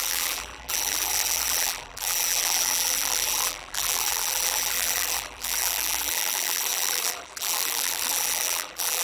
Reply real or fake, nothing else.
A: fake